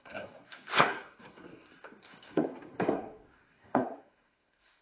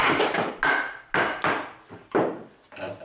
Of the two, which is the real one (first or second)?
second